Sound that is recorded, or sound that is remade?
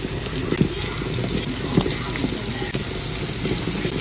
recorded